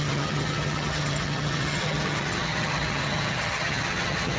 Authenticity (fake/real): fake